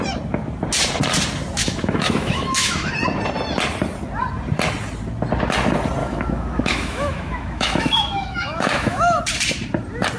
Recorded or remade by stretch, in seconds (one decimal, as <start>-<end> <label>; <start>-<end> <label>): 0.0-1.6 recorded; 1.6-2.9 remade; 2.9-6.0 recorded; 6.0-9.2 remade; 9.2-10.2 recorded